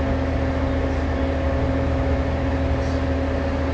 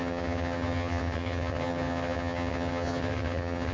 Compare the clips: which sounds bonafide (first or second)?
first